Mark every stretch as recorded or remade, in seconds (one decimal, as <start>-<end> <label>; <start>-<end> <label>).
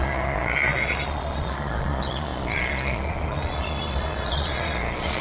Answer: 0.0-5.2 remade